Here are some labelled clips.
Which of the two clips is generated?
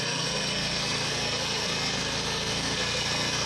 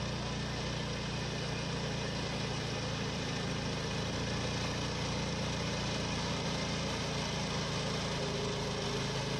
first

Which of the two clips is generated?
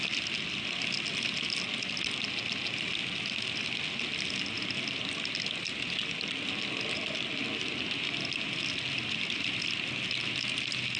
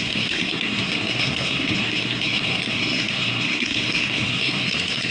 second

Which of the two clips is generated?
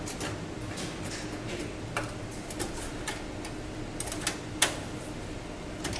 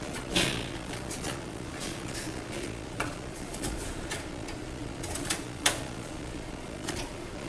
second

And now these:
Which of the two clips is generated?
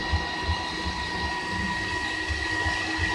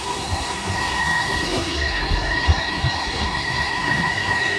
second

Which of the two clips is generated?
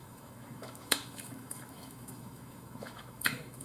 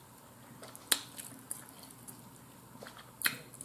first